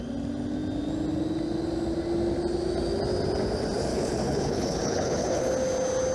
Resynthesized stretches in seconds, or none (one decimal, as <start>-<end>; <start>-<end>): 3.9-5.4